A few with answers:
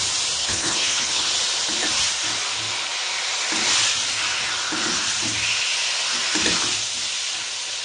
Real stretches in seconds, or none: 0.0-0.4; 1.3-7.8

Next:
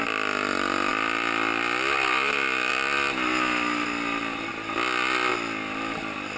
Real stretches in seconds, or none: 0.0-6.4

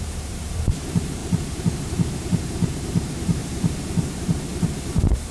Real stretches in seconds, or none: 3.4-4.1; 4.5-5.3

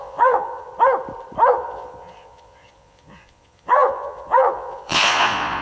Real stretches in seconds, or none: 0.7-1.5

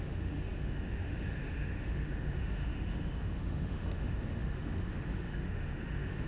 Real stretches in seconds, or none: none

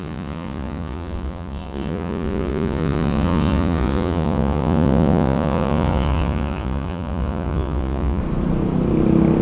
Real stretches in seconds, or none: 8.2-9.4

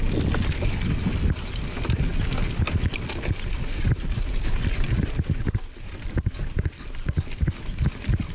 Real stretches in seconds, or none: 0.0-8.3